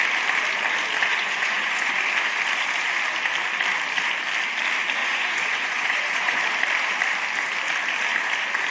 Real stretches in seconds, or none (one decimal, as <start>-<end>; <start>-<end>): 0.0-1.1; 1.9-5.0; 6.4-8.7